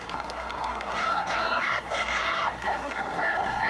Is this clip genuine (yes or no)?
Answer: no